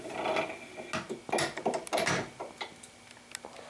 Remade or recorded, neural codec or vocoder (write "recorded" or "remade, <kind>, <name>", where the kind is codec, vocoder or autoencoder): recorded